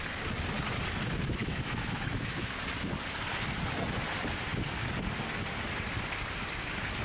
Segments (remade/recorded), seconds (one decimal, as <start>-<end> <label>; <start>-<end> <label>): 0.0-1.4 recorded; 1.4-2.5 remade; 2.5-7.0 recorded